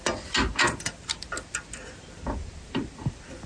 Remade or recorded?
recorded